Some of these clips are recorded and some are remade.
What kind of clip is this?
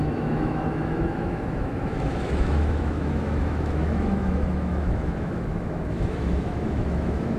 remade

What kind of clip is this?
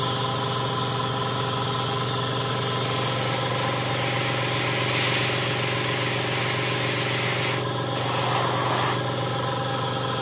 recorded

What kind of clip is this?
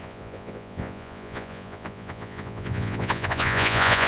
remade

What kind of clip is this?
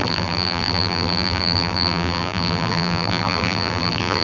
remade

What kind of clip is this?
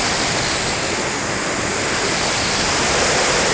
recorded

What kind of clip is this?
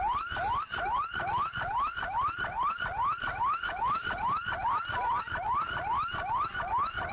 recorded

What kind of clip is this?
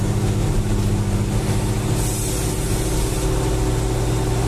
recorded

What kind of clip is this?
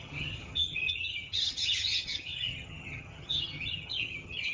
remade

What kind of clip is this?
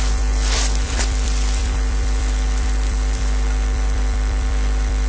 remade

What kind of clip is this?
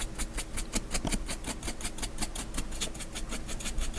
recorded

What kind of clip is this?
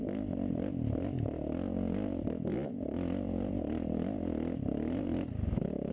recorded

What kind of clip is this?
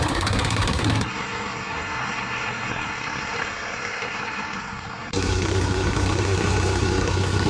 remade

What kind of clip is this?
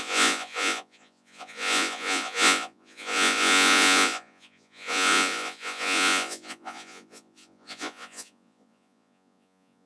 remade